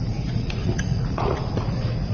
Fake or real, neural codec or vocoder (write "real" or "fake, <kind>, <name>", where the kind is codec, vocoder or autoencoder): fake, vocoder, Vocos